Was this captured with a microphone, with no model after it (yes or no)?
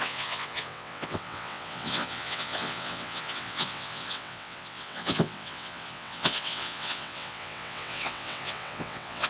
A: no